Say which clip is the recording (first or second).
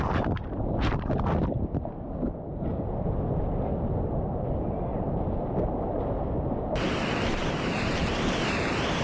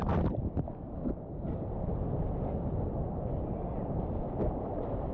first